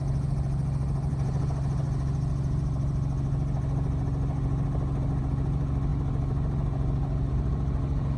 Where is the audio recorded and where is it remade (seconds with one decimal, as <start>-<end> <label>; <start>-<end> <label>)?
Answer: 0.0-8.2 recorded